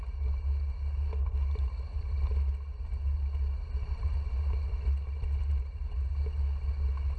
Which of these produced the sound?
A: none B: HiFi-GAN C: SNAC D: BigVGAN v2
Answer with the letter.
A